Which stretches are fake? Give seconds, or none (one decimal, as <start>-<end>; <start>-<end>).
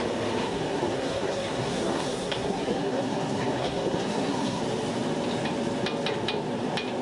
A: 0.4-4.6